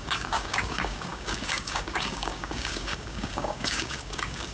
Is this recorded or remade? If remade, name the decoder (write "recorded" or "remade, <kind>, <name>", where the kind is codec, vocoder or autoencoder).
remade, codec, DAC